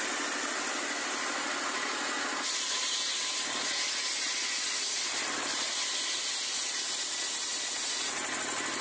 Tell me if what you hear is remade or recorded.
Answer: recorded